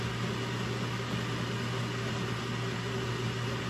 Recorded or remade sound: recorded